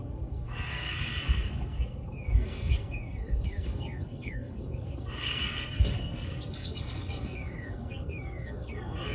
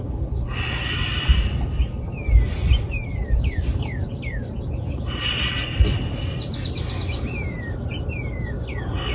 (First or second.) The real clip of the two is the second